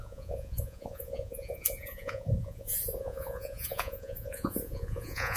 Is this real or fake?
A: fake